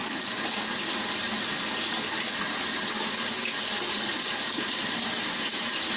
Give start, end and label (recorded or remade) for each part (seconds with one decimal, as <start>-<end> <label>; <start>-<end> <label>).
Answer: 0.0-3.6 recorded; 3.6-6.0 remade